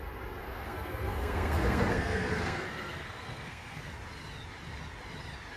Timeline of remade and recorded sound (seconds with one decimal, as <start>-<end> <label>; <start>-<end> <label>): 0.0-0.4 recorded; 0.4-3.8 remade; 3.8-5.6 recorded